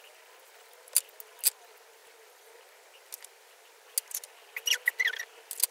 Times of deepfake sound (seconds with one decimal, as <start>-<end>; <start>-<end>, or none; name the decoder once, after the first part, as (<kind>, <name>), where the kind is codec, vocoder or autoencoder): none